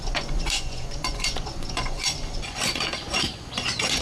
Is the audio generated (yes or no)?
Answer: yes